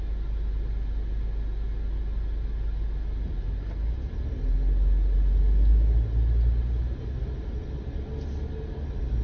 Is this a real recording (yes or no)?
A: yes